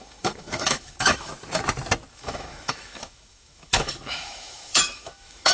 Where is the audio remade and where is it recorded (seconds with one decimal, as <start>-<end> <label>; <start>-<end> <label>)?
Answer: 0.0-1.3 remade; 1.3-2.1 recorded; 2.1-5.5 remade